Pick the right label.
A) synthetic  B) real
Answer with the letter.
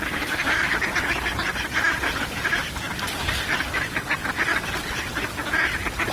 A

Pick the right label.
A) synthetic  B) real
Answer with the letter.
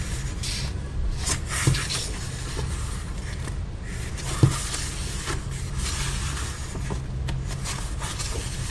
B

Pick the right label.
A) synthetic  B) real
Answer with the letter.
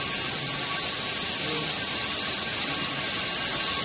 B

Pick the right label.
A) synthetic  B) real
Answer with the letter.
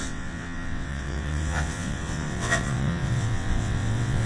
A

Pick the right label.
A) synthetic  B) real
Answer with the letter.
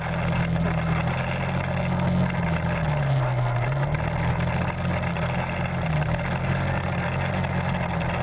B